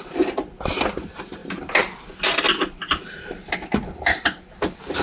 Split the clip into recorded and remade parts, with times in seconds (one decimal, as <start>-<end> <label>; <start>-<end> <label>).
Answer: 0.0-5.0 recorded